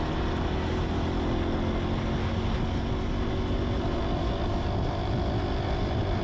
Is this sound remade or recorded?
recorded